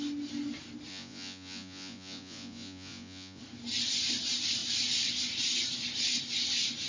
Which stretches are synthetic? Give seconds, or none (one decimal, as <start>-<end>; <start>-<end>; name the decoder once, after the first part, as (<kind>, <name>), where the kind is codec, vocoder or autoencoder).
0.9-3.4 (vocoder, Vocos)